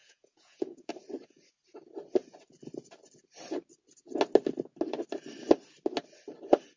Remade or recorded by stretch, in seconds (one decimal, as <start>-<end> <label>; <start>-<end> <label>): 0.0-0.9 remade; 0.9-6.8 recorded